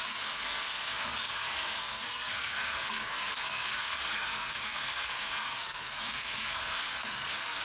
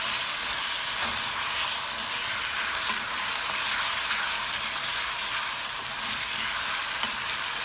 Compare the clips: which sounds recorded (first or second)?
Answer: second